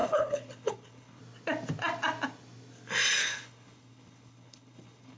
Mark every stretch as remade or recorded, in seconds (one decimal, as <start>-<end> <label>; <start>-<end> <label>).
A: 0.0-1.2 remade; 1.2-3.2 recorded; 3.2-5.2 remade